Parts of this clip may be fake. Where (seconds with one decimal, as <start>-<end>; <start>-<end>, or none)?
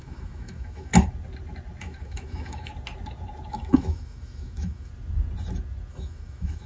0.0-0.9; 1.8-2.7; 3.5-4.9; 5.9-6.7